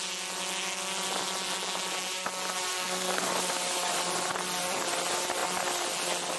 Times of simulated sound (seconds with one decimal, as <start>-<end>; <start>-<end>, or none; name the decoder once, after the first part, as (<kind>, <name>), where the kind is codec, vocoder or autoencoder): 2.7-3.3 (codec, SNAC)